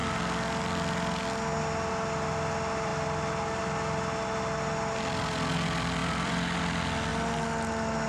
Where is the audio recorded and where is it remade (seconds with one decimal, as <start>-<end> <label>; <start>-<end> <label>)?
0.0-6.0 recorded; 6.0-6.6 remade; 6.6-8.1 recorded